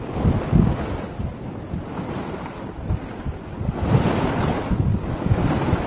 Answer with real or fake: real